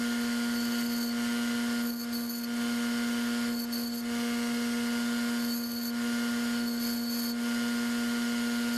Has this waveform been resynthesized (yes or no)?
no